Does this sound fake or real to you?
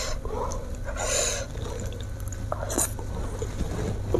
real